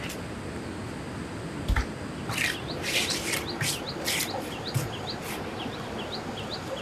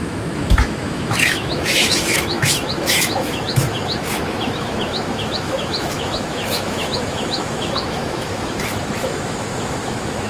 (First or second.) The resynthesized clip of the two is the second